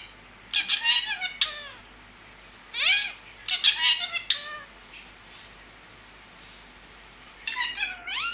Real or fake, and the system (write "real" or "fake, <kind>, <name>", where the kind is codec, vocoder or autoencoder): real